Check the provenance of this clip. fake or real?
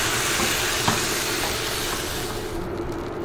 real